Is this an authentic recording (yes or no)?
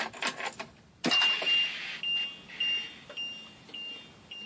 yes